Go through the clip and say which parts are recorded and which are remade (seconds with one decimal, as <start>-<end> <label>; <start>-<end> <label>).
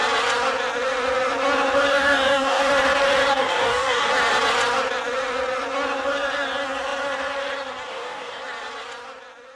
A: 0.0-1.9 recorded; 1.9-2.7 remade; 2.7-3.3 recorded; 3.3-4.1 remade; 4.1-7.9 recorded; 7.9-8.4 remade; 8.4-9.6 recorded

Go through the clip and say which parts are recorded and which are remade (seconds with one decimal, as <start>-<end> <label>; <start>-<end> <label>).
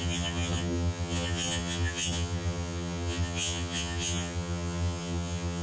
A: 0.0-5.6 remade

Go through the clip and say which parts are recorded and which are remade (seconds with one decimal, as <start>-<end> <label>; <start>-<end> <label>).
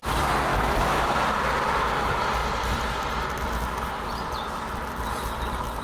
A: 0.0-0.5 recorded; 0.5-1.0 remade; 1.0-5.8 recorded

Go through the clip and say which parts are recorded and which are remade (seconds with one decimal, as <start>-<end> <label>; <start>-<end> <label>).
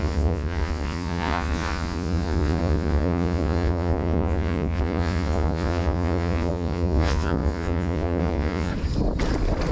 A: 0.0-8.7 remade; 8.7-9.7 recorded